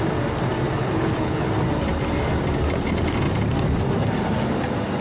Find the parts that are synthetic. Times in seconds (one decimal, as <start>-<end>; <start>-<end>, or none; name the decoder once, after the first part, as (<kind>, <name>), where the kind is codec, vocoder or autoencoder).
0.8-1.5 (codec, HILCodec)